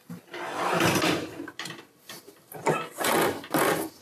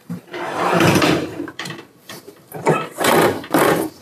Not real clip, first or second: second